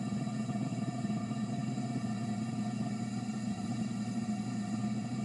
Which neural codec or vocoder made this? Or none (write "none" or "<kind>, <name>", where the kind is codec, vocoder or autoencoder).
vocoder, BigVGAN v2